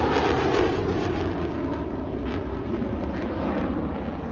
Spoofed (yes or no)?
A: no